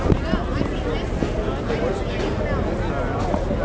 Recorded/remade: recorded